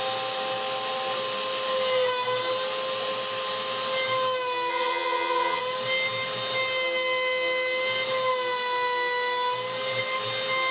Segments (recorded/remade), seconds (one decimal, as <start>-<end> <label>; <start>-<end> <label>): 0.0-4.7 recorded; 4.7-5.6 remade; 5.6-10.7 recorded